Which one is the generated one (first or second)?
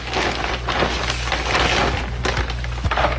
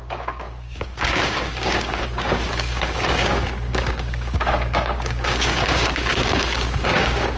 second